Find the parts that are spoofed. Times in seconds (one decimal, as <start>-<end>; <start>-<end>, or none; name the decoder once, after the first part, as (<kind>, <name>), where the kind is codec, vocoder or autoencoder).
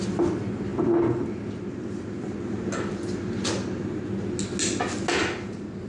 none